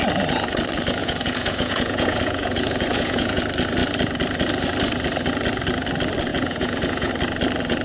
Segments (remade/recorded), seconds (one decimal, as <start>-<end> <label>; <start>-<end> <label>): 0.0-1.0 recorded; 1.0-3.4 remade; 3.4-6.3 recorded; 6.3-7.1 remade; 7.1-7.8 recorded